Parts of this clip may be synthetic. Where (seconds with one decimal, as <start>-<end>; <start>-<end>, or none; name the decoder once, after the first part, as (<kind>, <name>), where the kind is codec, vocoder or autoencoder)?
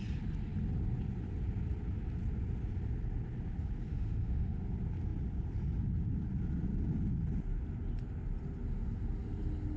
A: 3.9-4.6 (autoencoder, DAC-VAE)